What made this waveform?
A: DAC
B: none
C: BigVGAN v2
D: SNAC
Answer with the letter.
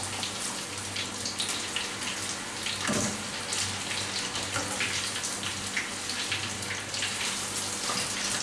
B